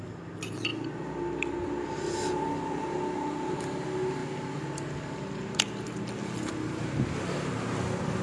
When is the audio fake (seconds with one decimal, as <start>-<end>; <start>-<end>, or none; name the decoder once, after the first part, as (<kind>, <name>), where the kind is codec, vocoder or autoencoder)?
none